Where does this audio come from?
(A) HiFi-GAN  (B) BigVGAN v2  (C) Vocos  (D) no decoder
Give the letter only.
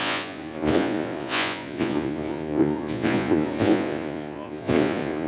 C